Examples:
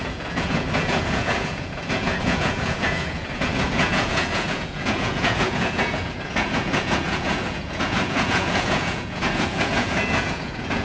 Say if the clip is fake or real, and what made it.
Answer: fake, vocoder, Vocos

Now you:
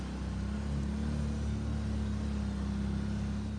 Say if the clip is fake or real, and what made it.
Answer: real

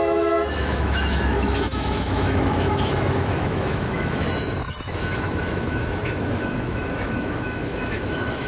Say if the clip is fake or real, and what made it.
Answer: fake, autoencoder, DAC-VAE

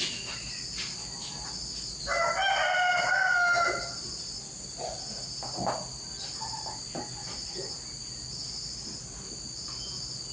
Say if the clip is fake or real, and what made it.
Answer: real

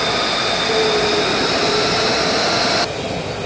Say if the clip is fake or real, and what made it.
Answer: real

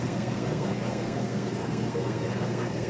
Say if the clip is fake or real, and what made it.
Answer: fake, codec, SNAC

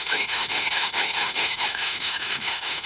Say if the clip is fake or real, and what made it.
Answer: fake, autoencoder, DAC-VAE